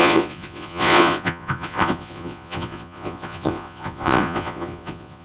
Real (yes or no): no